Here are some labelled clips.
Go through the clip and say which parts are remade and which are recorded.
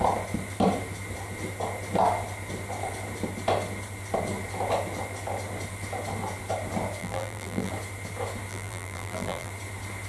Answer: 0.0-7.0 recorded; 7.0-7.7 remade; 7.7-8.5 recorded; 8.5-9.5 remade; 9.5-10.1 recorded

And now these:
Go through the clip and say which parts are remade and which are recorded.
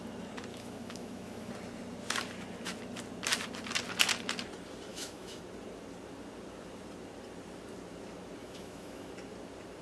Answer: 0.0-0.5 recorded; 0.5-1.5 remade; 1.5-4.9 recorded; 4.9-5.4 remade; 5.4-8.4 recorded; 8.4-9.1 remade; 9.1-9.8 recorded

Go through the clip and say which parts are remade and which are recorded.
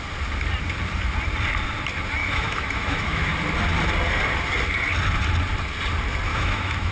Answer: 0.0-2.2 recorded; 2.2-3.3 remade; 3.3-6.3 recorded; 6.3-6.9 remade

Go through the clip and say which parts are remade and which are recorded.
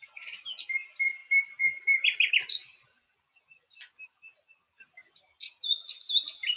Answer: 0.0-1.2 recorded; 1.2-2.3 remade; 2.3-6.6 recorded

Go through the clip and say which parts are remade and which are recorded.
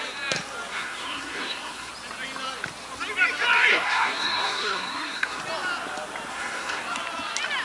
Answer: 0.0-0.7 recorded; 0.7-1.9 remade; 1.9-3.7 recorded; 3.7-5.4 remade; 5.4-6.3 recorded; 6.3-6.8 remade; 6.8-7.6 recorded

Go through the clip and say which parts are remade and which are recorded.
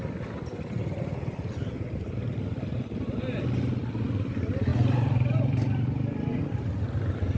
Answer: 0.0-4.7 recorded; 4.7-6.4 remade; 6.4-7.4 recorded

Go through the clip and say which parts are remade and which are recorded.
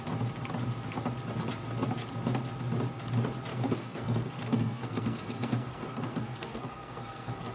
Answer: 0.0-3.5 recorded; 3.5-7.5 remade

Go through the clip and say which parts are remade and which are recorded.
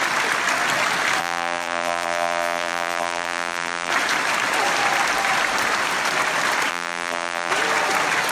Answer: 0.0-1.2 recorded; 1.2-3.9 remade; 3.9-6.7 recorded; 6.7-7.5 remade; 7.5-8.3 recorded